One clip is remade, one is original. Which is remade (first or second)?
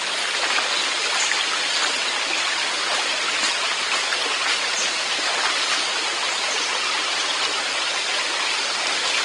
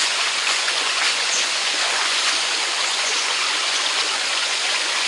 second